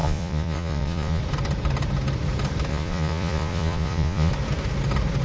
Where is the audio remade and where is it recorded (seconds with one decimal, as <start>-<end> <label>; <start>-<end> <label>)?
0.0-1.2 remade; 1.2-2.7 recorded; 2.7-4.3 remade; 4.3-5.2 recorded